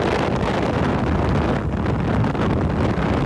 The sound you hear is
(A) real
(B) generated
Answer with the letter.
A